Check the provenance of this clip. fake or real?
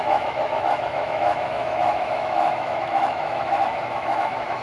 fake